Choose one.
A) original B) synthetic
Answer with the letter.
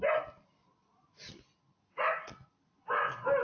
A